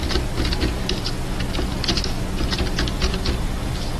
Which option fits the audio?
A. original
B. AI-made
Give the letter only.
A